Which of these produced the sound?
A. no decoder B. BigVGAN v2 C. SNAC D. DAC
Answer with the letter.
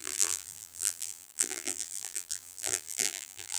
B